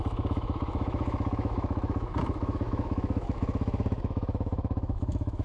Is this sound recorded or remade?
remade